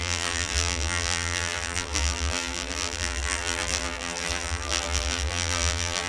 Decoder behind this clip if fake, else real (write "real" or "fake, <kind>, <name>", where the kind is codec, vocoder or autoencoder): fake, vocoder, BigVGAN v2